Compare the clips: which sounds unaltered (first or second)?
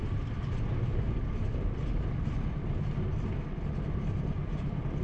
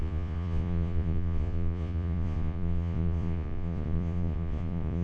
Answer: first